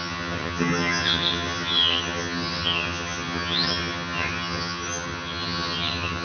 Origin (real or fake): fake